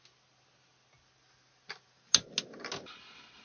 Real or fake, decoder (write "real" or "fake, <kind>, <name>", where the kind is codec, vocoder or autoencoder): real